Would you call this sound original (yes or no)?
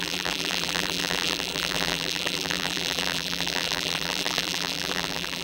no